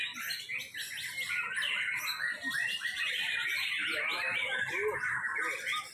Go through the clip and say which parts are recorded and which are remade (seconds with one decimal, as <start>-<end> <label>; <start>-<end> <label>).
0.0-5.9 recorded